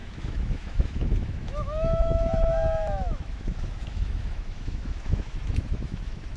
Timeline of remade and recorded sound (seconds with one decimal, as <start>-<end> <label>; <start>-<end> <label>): 0.0-6.4 remade